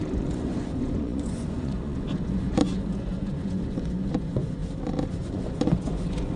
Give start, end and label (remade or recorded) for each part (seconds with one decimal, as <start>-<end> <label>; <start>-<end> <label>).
0.0-4.6 remade; 4.6-5.1 recorded; 5.1-6.4 remade